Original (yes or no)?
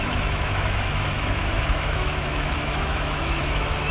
no